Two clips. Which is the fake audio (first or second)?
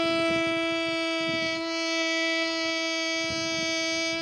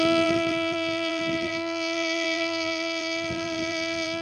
second